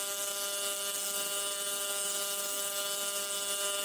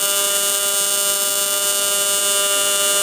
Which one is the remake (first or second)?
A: first